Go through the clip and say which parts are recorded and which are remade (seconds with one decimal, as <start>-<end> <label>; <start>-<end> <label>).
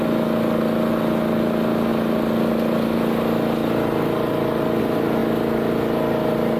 0.0-6.6 recorded